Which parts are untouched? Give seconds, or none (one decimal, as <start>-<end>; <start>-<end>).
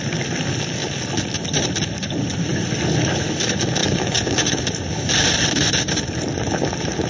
0.0-3.8; 4.6-7.1